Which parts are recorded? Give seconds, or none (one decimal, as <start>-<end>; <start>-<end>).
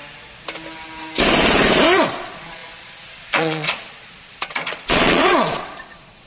0.0-2.1